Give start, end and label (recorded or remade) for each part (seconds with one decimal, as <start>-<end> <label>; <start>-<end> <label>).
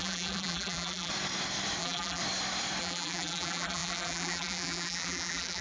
0.0-1.1 remade; 1.1-1.8 recorded; 1.8-2.2 remade; 2.2-2.8 recorded; 2.8-5.6 remade